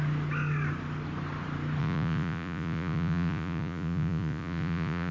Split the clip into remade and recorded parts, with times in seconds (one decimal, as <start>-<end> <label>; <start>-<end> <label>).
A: 0.0-1.8 recorded; 1.8-5.1 remade